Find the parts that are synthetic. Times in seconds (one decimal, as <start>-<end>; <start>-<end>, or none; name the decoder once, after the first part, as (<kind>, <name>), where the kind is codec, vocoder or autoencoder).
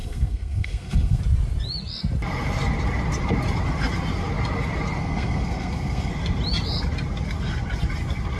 0.0-1.2 (codec, SNAC); 5.0-6.1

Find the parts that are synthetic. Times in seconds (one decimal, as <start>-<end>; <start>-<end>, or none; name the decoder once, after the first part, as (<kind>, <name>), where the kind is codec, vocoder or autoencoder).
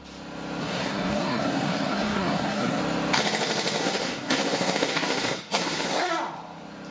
0.6-2.8 (codec, SNAC); 3.8-6.1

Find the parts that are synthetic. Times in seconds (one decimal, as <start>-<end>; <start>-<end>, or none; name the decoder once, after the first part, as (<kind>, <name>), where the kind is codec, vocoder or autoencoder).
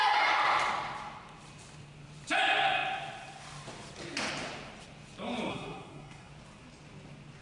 5.5-6.3 (codec, SNAC)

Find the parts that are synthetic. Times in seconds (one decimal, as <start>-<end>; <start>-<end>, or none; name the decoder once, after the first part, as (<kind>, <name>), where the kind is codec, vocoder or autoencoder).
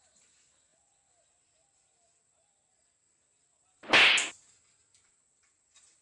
none